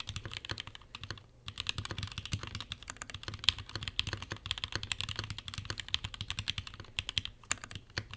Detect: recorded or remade recorded